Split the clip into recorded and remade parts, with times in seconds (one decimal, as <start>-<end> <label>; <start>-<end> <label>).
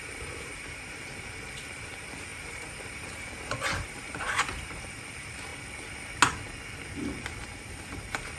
0.0-5.5 remade; 5.5-7.2 recorded; 7.2-8.4 remade